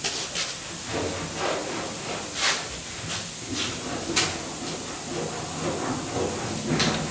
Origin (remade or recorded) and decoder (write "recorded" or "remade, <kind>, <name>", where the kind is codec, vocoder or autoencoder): recorded